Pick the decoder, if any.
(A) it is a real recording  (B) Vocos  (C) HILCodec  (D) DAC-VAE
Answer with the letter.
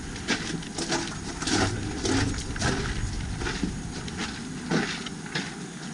A